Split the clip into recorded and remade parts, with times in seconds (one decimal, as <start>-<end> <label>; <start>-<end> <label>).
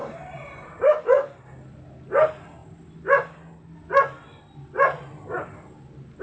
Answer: 0.0-0.7 remade; 0.7-6.2 recorded